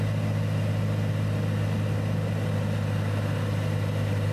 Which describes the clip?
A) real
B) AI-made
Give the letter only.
A